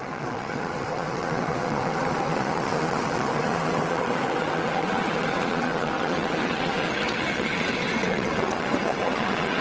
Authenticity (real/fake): fake